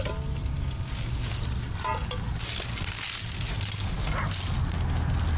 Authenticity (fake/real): real